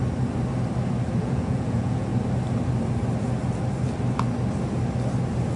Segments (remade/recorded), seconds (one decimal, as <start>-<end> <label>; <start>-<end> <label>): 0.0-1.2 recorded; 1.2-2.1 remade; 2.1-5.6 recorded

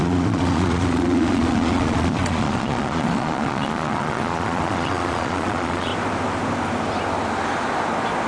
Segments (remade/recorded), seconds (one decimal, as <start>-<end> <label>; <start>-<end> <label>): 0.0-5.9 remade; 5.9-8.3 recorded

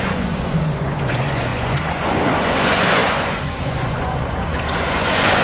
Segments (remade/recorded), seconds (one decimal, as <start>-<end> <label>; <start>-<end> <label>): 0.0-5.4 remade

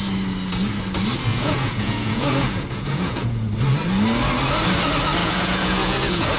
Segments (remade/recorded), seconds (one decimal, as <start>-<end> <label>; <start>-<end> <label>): 0.0-1.3 recorded; 1.3-3.5 remade; 3.5-5.2 recorded; 5.2-6.4 remade

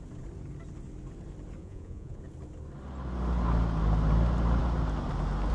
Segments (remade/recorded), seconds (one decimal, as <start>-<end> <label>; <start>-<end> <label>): 0.0-1.6 recorded; 1.6-2.2 remade; 2.2-5.5 recorded

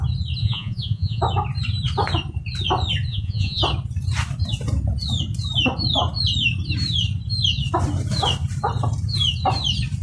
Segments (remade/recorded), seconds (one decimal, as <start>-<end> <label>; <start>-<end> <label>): 0.0-0.4 recorded; 0.4-1.2 remade; 1.2-3.1 recorded; 3.1-3.6 remade; 3.6-10.0 recorded

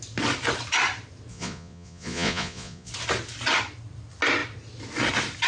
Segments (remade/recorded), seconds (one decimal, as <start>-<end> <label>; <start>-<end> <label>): 0.0-1.3 recorded; 1.3-2.9 remade; 2.9-5.5 recorded